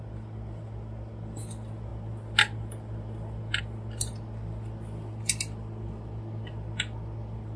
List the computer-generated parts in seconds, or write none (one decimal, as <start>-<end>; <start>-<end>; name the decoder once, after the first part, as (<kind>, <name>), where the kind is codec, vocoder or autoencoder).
none